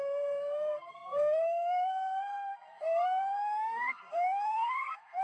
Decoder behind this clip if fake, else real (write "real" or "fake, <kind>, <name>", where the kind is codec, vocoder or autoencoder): fake, codec, SNAC